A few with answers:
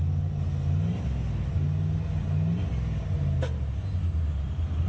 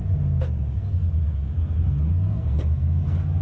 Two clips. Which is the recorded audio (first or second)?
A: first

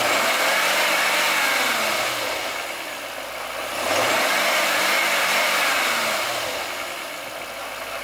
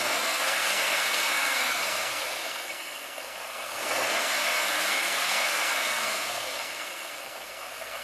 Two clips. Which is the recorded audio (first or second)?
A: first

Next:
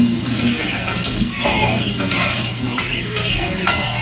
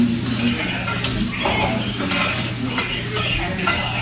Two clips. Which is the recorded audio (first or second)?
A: second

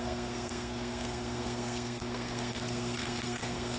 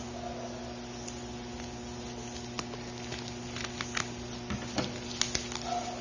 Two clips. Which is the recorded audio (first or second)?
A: second